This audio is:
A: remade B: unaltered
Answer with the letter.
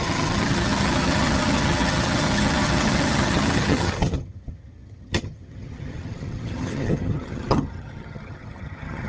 A